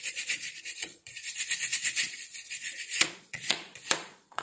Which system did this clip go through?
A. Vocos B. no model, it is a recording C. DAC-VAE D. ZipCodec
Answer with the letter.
A